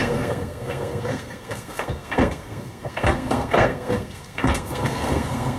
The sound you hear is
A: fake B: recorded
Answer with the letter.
A